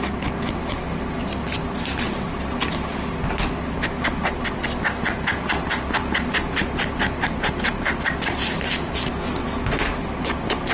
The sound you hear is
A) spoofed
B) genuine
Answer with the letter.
B